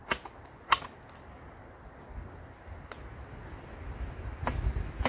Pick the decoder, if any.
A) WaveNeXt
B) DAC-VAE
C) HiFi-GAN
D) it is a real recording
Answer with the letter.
D